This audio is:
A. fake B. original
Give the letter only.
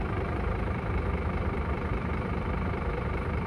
A